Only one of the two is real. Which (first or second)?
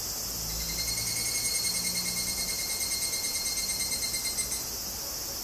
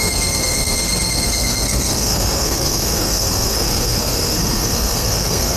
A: first